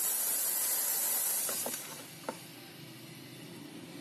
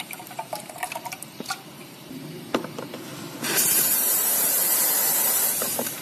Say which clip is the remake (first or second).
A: second